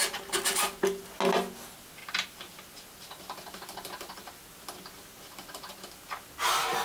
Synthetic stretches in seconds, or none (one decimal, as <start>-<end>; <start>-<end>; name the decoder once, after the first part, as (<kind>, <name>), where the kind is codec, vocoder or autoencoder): none